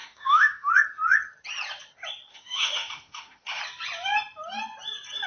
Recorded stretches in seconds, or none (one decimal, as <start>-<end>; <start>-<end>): 0.7-2.3; 3.6-5.3